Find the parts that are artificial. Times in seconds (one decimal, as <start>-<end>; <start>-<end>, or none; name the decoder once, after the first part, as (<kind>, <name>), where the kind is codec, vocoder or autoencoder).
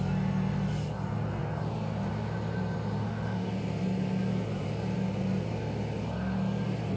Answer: 3.0-3.5 (autoencoder, DAC-VAE)